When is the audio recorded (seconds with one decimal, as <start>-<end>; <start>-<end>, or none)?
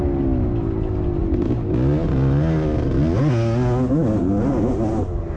0.0-4.2